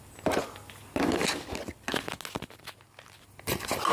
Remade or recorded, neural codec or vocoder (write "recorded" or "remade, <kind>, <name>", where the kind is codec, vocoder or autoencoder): recorded